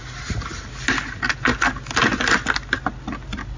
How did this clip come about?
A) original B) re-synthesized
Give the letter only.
A